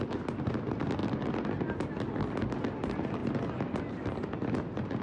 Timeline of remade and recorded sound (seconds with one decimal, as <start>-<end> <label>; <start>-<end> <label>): 0.0-5.0 recorded